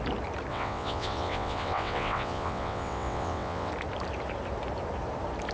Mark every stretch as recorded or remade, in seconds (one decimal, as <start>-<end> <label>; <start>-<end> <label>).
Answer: 0.0-0.5 recorded; 0.5-3.7 remade; 3.7-5.5 recorded